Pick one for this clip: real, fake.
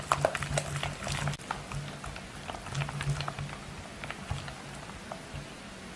real